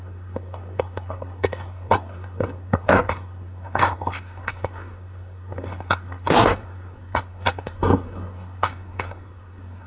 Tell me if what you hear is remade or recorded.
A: remade